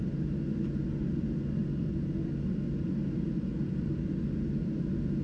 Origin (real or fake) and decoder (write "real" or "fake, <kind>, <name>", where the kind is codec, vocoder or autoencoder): real